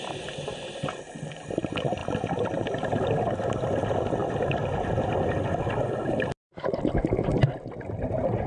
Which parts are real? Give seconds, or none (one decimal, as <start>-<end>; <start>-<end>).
0.0-8.5